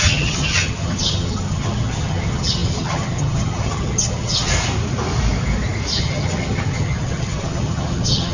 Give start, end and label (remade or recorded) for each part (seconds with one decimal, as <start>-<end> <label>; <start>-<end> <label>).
0.0-4.5 remade; 4.5-6.0 recorded; 6.0-8.3 remade